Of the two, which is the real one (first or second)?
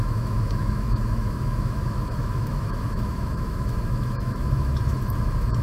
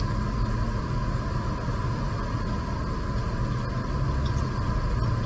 second